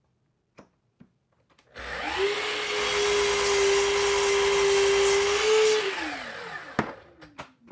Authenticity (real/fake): real